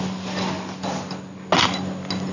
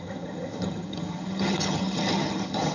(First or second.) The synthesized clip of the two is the second